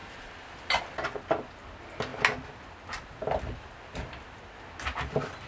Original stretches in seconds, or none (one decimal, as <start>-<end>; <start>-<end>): 0.0-5.5